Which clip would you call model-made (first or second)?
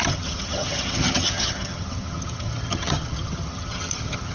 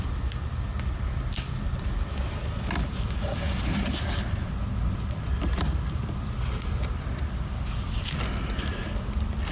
first